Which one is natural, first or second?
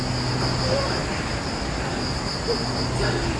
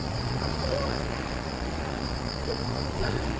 first